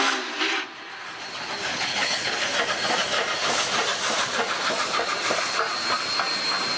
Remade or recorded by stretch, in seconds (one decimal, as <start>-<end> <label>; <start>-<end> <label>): 0.0-1.7 recorded; 1.7-2.5 remade; 2.5-6.8 recorded